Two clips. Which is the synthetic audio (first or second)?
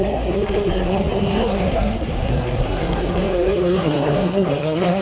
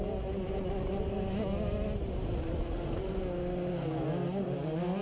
first